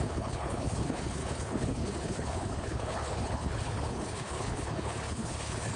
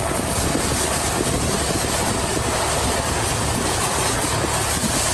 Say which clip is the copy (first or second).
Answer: first